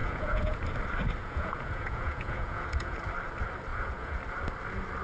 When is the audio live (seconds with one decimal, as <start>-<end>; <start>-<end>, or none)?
0.6-1.2; 3.0-3.7; 4.2-5.0

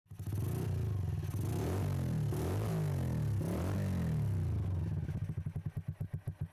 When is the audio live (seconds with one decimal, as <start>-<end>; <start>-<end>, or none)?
0.0-6.5

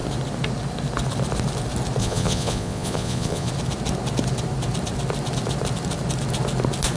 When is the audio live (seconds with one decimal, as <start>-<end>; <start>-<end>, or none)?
0.0-2.0; 3.5-7.0

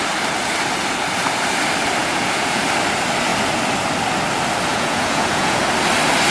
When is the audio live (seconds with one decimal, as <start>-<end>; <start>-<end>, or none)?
0.0-2.0; 2.6-4.7; 5.6-6.3

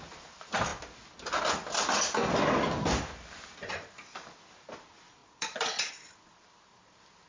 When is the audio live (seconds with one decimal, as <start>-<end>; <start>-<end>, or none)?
0.0-5.2; 5.9-7.3

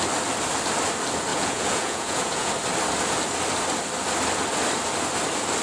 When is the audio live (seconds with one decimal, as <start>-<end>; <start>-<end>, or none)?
0.0-1.3; 2.5-5.6

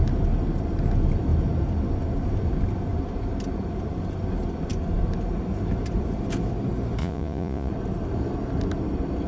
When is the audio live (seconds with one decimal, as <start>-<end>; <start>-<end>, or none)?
0.0-7.0; 7.7-9.3